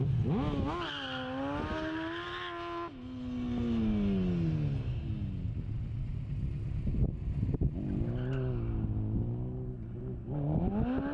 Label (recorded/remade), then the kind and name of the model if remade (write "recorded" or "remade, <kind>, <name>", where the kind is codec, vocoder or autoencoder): recorded